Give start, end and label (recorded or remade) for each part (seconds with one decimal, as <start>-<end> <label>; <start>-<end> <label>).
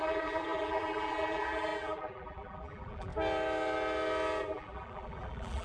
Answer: 0.0-3.1 remade; 3.1-4.4 recorded; 4.4-5.6 remade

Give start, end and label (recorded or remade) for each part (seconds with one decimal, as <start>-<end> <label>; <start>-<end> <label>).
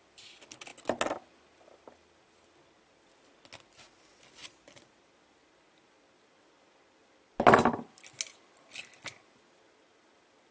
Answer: 0.0-4.4 recorded; 4.4-5.2 remade; 5.2-10.5 recorded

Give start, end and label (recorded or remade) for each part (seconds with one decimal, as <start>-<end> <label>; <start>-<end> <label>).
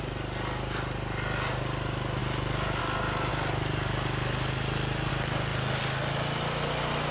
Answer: 0.0-2.2 recorded; 2.2-2.8 remade; 2.8-7.1 recorded